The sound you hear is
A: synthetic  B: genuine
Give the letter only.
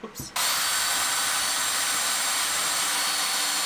B